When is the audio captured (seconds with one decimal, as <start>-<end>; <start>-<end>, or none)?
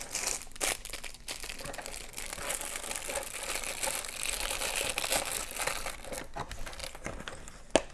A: 0.0-7.9